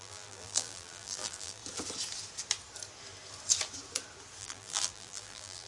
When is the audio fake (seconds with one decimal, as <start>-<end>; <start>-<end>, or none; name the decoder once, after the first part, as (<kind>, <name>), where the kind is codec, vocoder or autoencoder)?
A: 0.0-1.6 (vocoder, BigVGAN v2); 4.4-5.7